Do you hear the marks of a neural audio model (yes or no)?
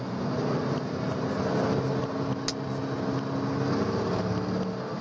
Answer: no